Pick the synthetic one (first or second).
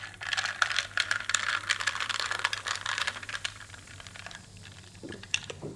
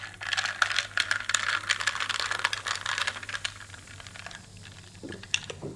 first